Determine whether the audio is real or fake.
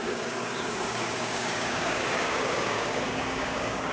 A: fake